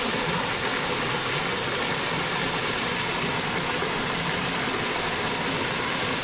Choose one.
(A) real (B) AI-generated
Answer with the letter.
A